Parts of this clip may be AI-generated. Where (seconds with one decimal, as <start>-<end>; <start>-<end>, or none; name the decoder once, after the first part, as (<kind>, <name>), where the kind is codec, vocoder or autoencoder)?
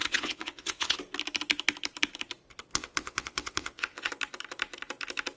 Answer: 0.0-1.0 (vocoder, WaveNeXt); 2.7-4.1